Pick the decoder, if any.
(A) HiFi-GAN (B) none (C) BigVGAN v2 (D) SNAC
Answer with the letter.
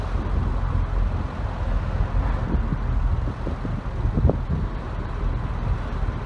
B